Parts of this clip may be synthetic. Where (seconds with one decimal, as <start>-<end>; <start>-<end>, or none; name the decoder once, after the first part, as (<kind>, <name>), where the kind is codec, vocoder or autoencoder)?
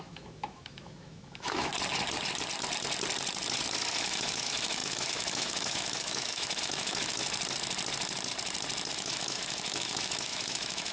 0.0-1.7 (autoencoder, DAC-VAE); 3.9-7.2; 8.9-10.9